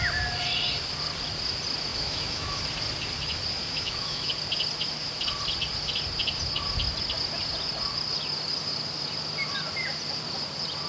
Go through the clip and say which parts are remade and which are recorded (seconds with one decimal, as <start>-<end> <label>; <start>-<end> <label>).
0.0-1.9 recorded; 1.9-2.6 remade; 2.6-3.6 recorded; 3.6-4.3 remade; 4.3-10.9 recorded